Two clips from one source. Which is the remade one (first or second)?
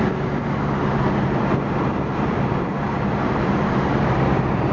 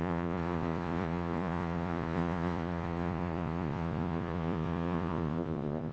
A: second